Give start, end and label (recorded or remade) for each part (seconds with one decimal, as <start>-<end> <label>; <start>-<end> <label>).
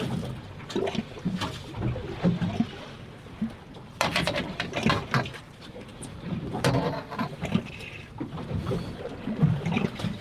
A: 0.0-10.2 recorded